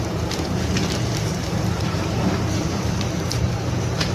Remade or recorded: remade